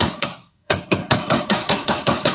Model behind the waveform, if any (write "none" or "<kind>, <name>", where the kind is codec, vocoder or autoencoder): codec, SNAC